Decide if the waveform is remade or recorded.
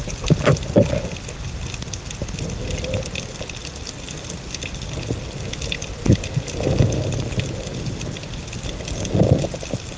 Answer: recorded